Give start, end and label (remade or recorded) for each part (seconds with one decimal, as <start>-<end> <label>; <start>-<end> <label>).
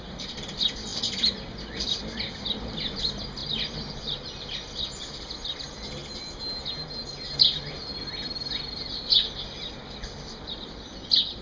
0.0-11.4 recorded